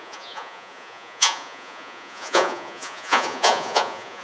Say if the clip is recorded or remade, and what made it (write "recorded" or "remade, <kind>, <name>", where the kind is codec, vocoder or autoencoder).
remade, vocoder, Vocos